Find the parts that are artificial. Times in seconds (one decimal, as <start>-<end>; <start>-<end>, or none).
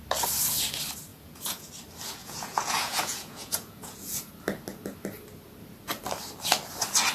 1.1-1.7; 2.2-4.3